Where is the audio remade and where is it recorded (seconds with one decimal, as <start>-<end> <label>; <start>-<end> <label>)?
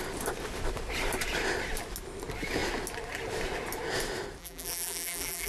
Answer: 0.0-4.4 recorded; 4.4-5.5 remade